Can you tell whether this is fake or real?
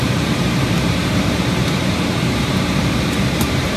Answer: fake